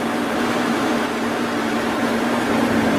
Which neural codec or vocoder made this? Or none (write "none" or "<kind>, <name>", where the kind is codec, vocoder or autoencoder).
vocoder, BigVGAN v2